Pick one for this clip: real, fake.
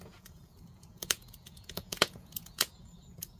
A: fake